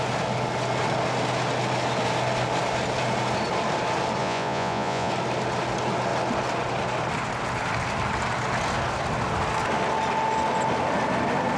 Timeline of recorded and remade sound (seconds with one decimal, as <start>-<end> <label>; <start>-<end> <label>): 0.0-4.2 recorded; 4.2-5.1 remade; 5.1-11.6 recorded